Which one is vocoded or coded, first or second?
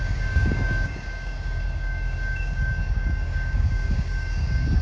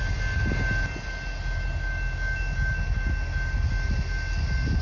first